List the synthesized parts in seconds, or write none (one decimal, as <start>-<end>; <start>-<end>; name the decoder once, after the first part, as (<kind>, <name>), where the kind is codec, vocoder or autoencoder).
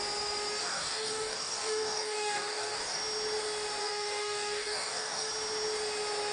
0.6-3.0 (codec, DAC); 3.8-5.3